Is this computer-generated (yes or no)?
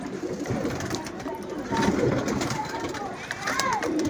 yes